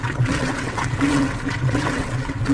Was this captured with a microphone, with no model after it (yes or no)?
no